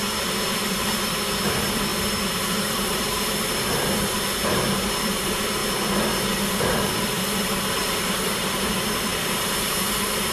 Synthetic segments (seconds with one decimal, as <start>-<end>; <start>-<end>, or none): 0.0-5.6; 6.3-10.3